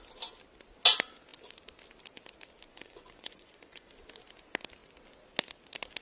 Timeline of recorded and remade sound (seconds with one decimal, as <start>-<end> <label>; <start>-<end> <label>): 0.0-2.7 recorded; 2.7-3.9 remade; 3.9-6.0 recorded